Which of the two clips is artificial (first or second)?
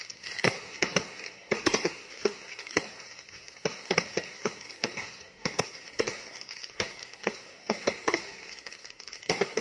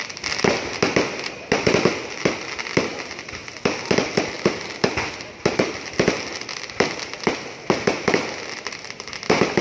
first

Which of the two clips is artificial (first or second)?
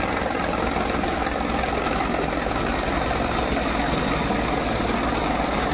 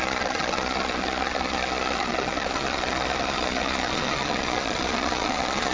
second